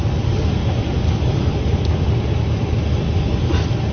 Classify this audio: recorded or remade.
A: recorded